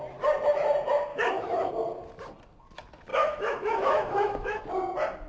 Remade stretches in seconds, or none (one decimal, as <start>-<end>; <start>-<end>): 1.1-1.7; 3.1-4.6